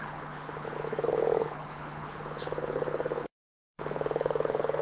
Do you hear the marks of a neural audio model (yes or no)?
yes